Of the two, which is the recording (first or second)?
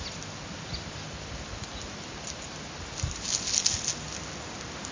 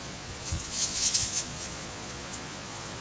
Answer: first